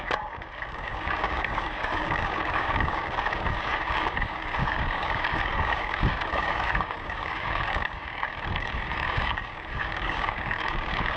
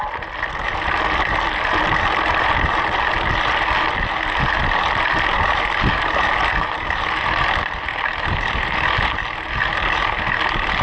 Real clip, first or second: second